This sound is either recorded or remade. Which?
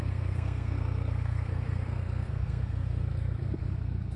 remade